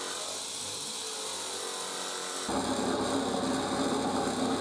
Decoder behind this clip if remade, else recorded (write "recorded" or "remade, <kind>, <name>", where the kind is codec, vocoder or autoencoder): recorded